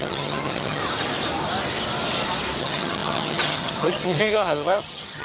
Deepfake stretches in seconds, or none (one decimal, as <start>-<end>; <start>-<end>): 0.0-0.8; 2.6-5.2

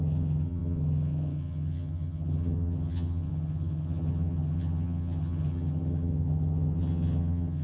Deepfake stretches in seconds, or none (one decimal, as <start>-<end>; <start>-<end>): 0.0-7.6

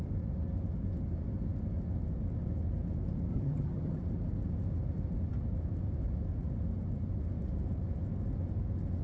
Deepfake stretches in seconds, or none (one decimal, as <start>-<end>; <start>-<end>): 3.3-4.0

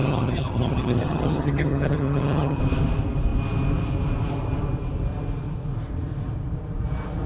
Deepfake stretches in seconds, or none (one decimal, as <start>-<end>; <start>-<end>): 0.0-2.6

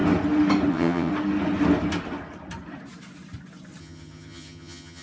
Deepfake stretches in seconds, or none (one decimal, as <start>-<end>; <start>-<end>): 0.7-1.1; 3.8-5.0

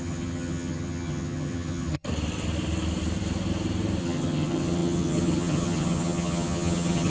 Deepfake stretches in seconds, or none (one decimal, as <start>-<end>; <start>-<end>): 0.0-2.1; 4.0-7.1